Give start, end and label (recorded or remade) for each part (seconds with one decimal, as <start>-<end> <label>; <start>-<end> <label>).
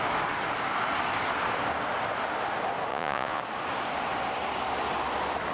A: 0.0-2.9 recorded; 2.9-3.4 remade; 3.4-5.5 recorded